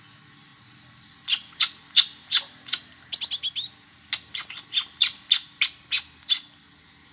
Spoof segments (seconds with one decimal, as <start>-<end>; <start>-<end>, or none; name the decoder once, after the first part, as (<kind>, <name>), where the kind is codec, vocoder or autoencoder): none